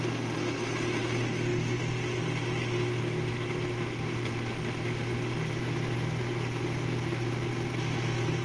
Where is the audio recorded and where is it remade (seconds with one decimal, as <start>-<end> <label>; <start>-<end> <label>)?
0.0-8.4 recorded